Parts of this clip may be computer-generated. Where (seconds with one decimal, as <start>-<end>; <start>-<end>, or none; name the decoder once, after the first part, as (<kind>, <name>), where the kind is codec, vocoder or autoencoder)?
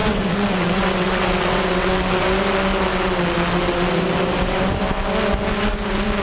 0.0-1.9 (vocoder, WaveNeXt)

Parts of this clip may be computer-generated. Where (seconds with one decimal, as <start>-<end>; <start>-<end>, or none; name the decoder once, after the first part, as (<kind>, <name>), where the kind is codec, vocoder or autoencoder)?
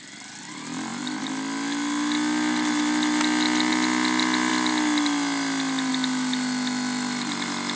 none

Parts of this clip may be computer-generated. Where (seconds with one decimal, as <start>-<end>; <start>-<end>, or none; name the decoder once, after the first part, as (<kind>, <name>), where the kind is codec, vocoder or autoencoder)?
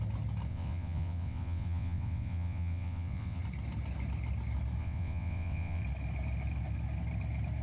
0.5-3.4 (vocoder, WaveNeXt); 4.8-5.8